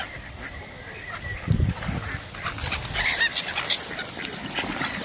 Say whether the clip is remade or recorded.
recorded